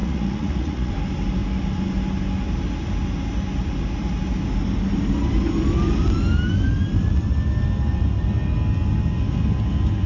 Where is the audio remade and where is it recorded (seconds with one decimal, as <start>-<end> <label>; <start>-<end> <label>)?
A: 0.0-0.9 remade; 0.9-10.1 recorded

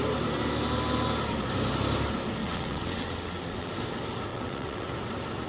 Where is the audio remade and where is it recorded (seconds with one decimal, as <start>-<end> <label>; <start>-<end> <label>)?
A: 0.0-2.4 recorded; 2.4-3.7 remade; 3.7-4.3 recorded; 4.3-4.9 remade; 4.9-5.5 recorded

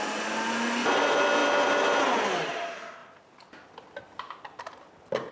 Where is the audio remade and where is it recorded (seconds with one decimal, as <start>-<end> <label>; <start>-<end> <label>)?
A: 0.0-5.3 recorded

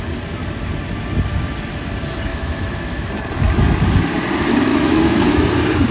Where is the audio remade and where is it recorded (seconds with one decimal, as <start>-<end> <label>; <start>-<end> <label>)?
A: 0.0-2.3 recorded; 2.3-3.1 remade; 3.1-4.7 recorded; 4.7-5.5 remade; 5.5-5.9 recorded